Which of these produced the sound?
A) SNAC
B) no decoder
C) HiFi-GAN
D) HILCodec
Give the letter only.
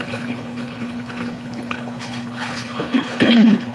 D